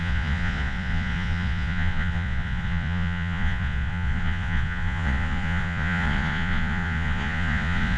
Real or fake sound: fake